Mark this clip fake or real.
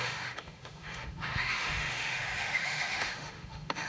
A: fake